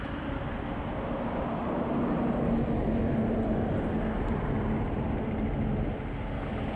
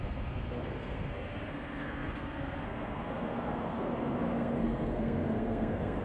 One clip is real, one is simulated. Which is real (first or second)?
first